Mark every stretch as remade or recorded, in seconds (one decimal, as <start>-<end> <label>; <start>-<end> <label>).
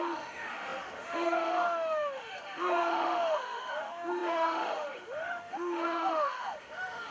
0.0-7.1 remade